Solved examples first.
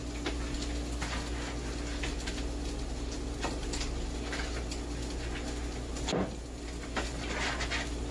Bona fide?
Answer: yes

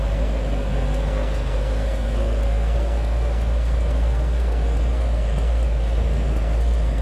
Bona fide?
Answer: no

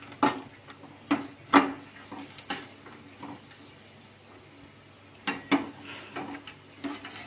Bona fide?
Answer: yes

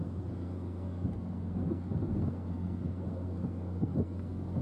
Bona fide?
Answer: no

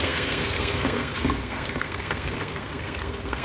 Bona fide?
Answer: no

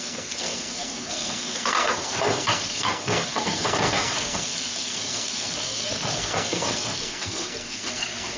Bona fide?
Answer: no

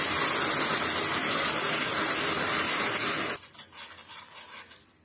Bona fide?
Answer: yes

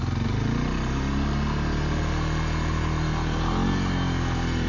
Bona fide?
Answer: yes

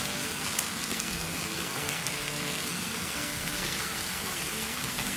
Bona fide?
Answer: no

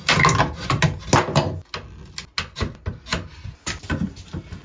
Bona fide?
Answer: yes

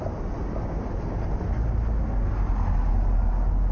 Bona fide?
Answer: yes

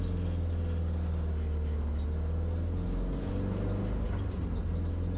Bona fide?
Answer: yes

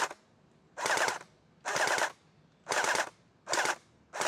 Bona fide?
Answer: yes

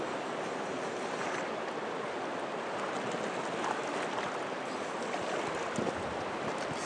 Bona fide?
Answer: yes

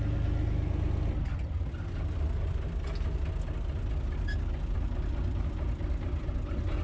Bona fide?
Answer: yes